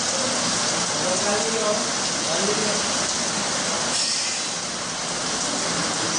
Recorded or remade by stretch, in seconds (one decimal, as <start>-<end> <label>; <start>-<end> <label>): 0.0-6.2 recorded